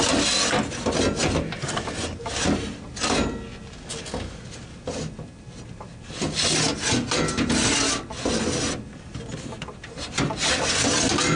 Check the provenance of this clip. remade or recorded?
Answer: recorded